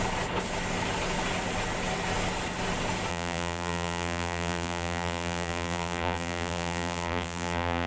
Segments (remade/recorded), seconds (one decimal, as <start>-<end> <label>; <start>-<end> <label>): 0.0-3.1 recorded; 3.1-7.9 remade